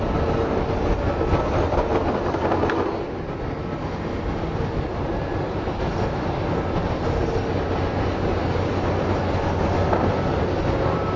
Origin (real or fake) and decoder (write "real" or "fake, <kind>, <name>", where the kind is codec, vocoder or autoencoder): real